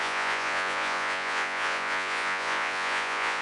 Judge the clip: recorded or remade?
remade